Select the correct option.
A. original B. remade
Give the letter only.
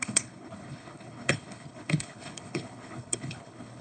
B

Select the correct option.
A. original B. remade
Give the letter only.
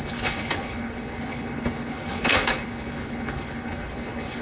B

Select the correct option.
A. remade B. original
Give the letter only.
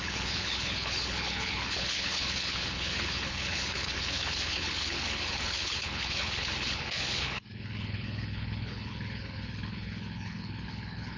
A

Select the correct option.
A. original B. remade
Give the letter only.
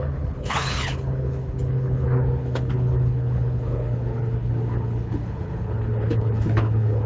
B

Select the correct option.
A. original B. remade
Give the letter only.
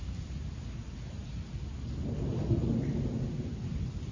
A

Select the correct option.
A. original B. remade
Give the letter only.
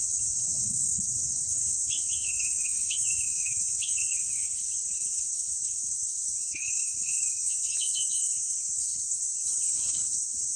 B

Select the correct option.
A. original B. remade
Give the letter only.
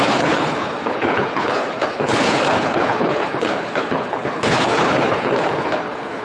B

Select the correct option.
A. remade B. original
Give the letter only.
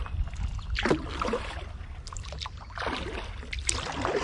B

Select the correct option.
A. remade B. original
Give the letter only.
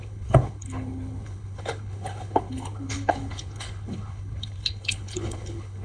A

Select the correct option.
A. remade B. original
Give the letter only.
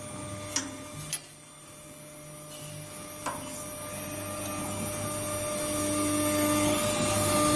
B